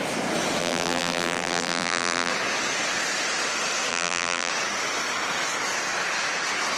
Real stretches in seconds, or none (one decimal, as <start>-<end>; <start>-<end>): 0.0-0.6; 2.3-3.9; 4.5-6.8